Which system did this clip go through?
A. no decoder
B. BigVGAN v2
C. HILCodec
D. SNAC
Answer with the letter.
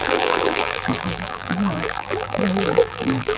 B